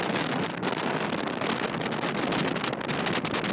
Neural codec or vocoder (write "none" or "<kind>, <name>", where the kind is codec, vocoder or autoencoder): none